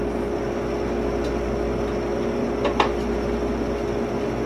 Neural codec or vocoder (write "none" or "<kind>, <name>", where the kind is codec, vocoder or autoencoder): none